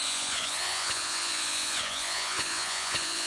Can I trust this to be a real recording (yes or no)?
no